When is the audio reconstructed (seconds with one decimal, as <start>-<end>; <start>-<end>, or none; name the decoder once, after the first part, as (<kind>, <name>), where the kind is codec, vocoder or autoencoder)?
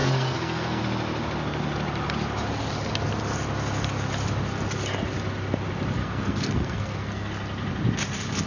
0.0-0.8 (codec, SNAC); 6.0-7.3